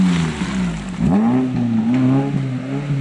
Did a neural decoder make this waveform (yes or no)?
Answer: no